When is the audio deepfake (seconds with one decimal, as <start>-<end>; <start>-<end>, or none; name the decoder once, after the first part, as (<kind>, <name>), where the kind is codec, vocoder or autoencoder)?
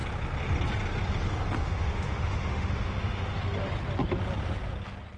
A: 1.6-3.4 (autoencoder, DAC-VAE)